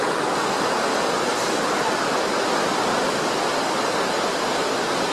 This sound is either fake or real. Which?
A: real